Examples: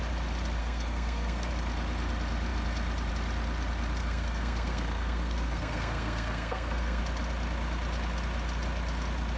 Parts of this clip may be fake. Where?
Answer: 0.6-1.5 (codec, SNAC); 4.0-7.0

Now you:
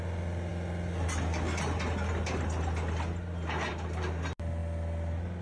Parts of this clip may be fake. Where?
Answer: none

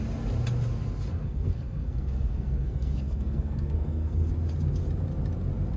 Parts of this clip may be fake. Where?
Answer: 1.1-4.3 (codec, SNAC)

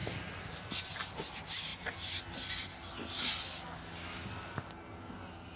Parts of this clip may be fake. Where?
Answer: none